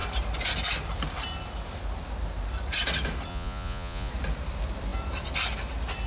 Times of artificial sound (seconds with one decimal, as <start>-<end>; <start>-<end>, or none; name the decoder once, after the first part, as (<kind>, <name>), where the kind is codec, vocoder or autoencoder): 3.3-4.1 (vocoder, Vocos)